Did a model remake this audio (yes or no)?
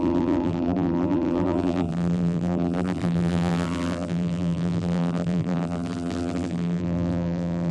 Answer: yes